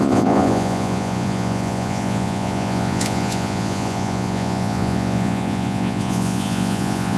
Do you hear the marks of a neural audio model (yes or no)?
yes